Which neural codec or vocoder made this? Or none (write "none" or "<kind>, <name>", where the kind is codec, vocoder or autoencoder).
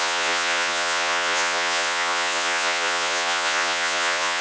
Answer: vocoder, Vocos